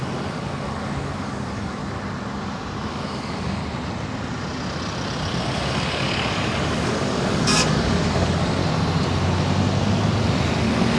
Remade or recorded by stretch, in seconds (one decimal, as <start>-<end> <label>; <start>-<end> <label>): 0.0-1.8 remade; 1.8-2.9 recorded; 2.9-3.6 remade; 3.6-5.4 recorded; 5.4-8.6 remade; 8.6-10.6 recorded; 10.6-11.0 remade